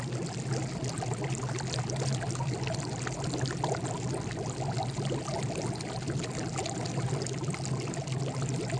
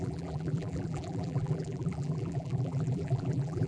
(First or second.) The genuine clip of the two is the first